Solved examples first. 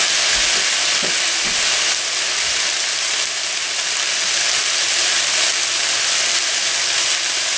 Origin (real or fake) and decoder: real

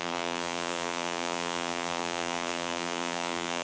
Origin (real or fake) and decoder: fake, vocoder, BigVGAN v2